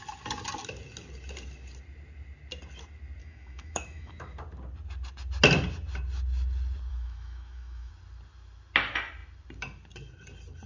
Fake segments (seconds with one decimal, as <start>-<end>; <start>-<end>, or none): 3.2-4.1; 6.9-7.9